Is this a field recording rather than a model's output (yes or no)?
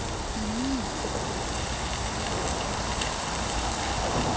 yes